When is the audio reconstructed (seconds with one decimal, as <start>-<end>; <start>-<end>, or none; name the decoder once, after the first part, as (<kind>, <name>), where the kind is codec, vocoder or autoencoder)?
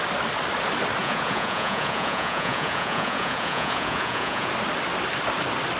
1.0-4.5 (vocoder, Vocos)